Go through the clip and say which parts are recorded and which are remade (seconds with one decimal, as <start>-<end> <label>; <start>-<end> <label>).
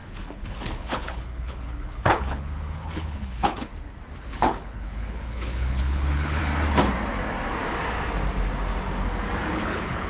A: 0.0-3.7 remade; 3.7-4.2 recorded; 4.2-6.4 remade; 6.4-9.5 recorded; 9.5-10.1 remade